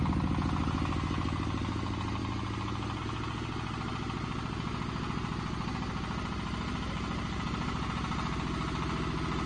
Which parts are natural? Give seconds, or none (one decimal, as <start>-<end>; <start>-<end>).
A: 0.0-9.5